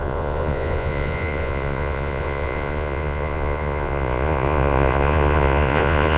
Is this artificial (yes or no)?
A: yes